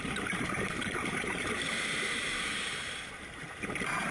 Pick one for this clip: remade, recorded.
remade